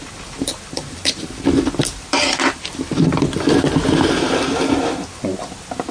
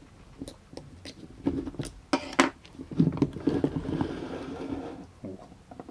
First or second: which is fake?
first